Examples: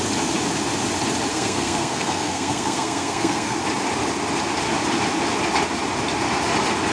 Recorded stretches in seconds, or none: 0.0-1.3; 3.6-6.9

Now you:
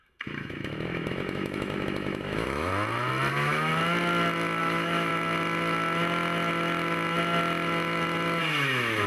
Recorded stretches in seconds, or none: 2.7-3.3; 3.7-4.6; 5.1-8.4